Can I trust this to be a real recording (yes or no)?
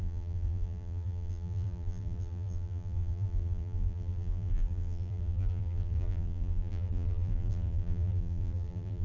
no